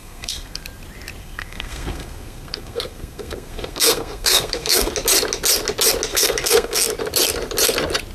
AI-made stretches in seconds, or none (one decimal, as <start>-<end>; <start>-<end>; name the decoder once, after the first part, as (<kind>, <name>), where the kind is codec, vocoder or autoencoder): 0.0-0.6 (codec, SNAC); 1.2-4.9; 6.1-6.8